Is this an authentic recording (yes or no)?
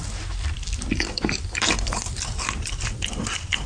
no